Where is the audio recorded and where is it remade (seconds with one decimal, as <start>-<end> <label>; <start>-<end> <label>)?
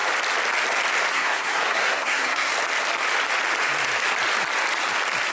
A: 0.0-1.1 recorded; 1.1-2.5 remade; 2.5-5.3 recorded